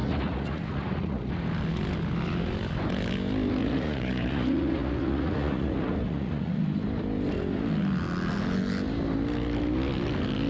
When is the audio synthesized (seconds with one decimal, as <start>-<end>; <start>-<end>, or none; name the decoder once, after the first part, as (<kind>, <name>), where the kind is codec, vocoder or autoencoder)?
0.0-1.3 (vocoder, Vocos); 3.6-6.6